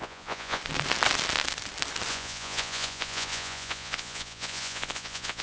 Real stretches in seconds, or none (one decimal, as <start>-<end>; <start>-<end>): 0.6-2.1